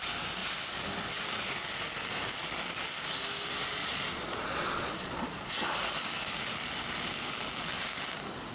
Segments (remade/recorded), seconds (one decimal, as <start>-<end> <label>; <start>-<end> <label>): 0.0-3.8 recorded; 3.8-5.5 remade; 5.5-8.5 recorded